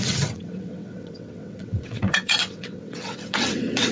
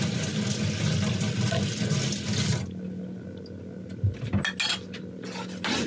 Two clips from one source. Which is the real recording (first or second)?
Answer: second